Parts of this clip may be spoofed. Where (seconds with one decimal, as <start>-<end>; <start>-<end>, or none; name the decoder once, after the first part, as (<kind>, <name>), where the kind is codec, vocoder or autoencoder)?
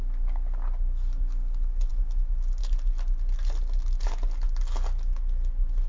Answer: none